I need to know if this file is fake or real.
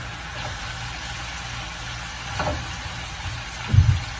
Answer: real